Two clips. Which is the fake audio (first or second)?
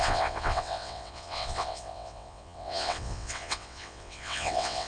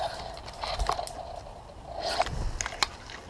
first